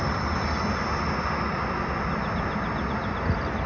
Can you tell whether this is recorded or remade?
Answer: recorded